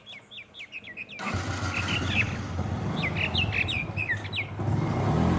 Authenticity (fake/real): real